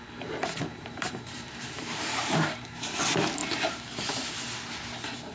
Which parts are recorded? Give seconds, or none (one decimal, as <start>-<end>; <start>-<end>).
0.0-0.7; 3.0-3.4; 3.9-5.3